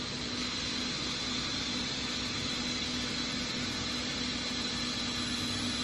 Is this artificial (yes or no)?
no